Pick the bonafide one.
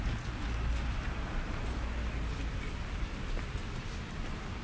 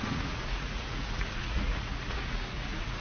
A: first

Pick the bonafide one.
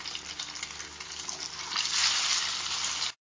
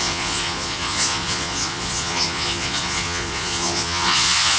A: first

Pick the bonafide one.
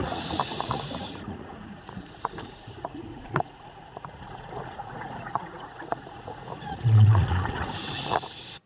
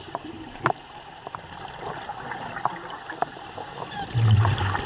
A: second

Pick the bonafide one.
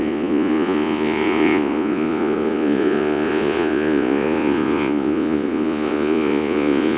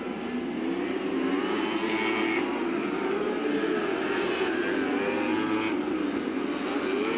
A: second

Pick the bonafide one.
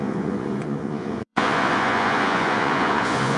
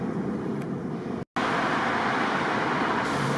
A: second